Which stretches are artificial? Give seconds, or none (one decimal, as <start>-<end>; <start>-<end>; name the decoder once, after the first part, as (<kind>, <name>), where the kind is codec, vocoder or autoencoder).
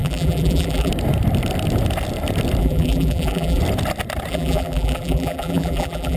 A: 0.0-0.9 (vocoder, BigVGAN v2); 2.6-3.6; 4.3-6.2